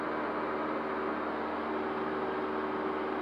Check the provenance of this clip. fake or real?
real